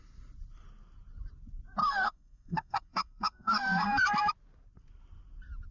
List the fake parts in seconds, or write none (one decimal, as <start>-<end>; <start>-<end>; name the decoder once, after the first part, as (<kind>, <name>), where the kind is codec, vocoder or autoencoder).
1.8-4.3 (codec, SNAC)